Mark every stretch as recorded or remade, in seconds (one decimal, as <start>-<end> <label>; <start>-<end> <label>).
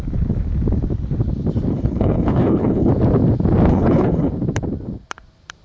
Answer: 0.0-1.7 recorded; 1.7-2.9 remade; 2.9-3.7 recorded; 3.7-4.3 remade; 4.3-5.6 recorded